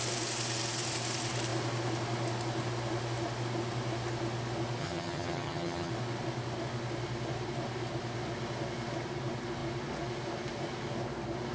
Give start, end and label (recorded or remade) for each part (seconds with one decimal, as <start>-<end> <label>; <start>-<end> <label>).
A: 0.0-4.8 recorded; 4.8-5.9 remade; 5.9-11.5 recorded